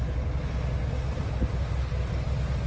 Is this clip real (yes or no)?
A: yes